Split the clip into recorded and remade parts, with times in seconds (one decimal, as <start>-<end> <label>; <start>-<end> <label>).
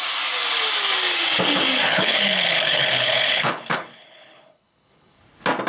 0.0-1.9 recorded; 1.9-5.2 remade; 5.2-5.7 recorded